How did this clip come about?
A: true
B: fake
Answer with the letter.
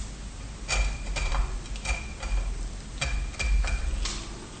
A